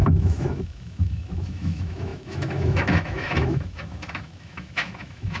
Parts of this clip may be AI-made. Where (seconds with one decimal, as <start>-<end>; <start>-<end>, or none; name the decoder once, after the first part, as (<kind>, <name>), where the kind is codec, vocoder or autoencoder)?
0.0-5.4 (autoencoder, DAC-VAE)